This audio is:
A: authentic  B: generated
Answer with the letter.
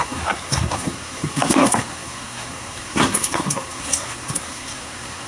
B